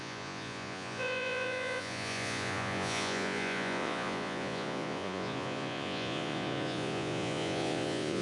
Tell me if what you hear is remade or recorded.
remade